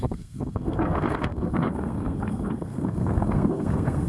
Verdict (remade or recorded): remade